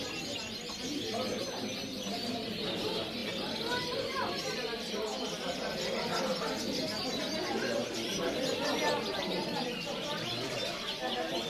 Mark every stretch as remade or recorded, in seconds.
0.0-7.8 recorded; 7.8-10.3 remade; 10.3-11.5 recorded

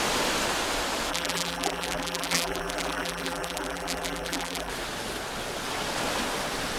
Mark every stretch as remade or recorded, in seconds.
0.0-1.1 recorded; 1.1-4.7 remade; 4.7-6.8 recorded